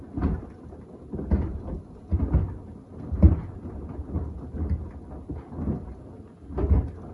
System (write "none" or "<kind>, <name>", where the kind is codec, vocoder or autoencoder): none